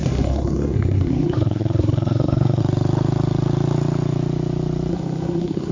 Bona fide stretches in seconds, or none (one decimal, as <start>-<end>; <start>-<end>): 2.6-4.9